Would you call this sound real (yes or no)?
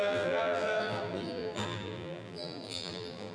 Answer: no